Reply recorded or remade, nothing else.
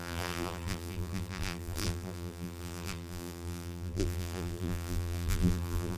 remade